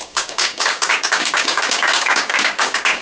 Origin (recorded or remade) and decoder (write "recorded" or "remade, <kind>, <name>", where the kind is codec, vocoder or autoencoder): remade, codec, DAC